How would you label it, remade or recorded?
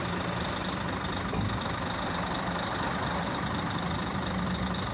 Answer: recorded